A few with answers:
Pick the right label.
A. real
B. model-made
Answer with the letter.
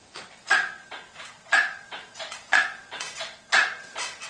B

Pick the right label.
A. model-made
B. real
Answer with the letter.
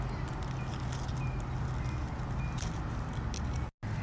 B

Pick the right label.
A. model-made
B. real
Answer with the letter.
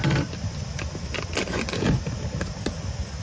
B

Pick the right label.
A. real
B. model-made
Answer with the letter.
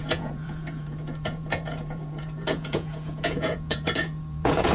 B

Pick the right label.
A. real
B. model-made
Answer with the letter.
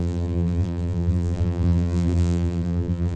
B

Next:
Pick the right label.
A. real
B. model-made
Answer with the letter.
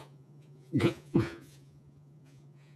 B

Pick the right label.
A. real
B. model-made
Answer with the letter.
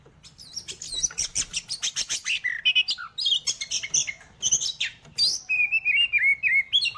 A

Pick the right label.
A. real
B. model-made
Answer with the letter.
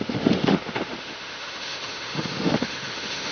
B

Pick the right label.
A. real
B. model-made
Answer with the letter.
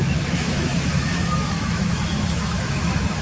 B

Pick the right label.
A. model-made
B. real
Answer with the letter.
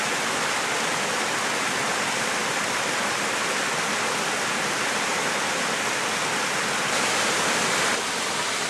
B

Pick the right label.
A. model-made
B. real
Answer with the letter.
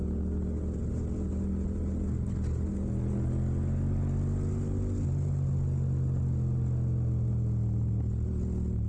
B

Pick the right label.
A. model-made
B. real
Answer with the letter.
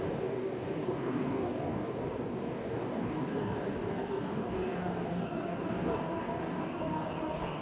A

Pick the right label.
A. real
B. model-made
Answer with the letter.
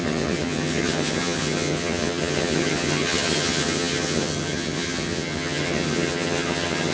B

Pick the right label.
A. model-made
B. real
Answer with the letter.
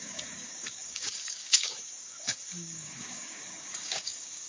A